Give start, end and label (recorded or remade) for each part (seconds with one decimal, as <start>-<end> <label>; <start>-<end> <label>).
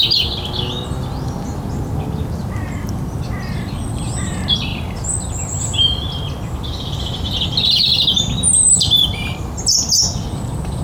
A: 0.0-10.8 recorded